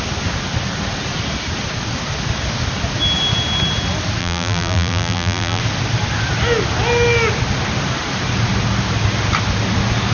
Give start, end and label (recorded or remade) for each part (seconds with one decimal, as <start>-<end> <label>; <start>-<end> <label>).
0.0-4.2 recorded; 4.2-5.6 remade; 5.6-10.1 recorded